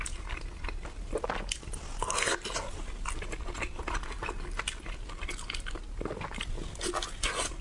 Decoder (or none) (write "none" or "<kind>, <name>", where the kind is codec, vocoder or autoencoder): none